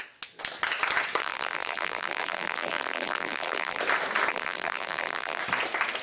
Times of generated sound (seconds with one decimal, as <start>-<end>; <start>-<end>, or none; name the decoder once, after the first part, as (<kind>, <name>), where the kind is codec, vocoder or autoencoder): 1.2-3.8 (vocoder, BigVGAN v2); 4.3-5.4